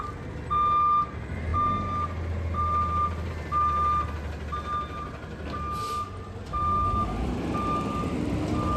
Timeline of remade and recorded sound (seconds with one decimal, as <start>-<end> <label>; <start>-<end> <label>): 0.0-8.8 recorded